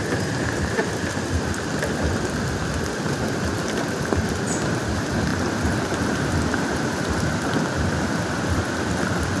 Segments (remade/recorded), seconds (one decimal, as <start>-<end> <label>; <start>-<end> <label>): 0.0-0.8 remade; 0.8-1.6 recorded; 1.6-9.4 remade